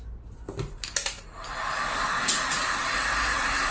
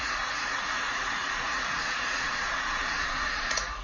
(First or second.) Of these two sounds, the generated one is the second